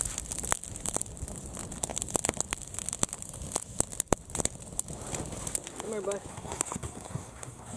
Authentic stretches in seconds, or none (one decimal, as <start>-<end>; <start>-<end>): 0.0-6.3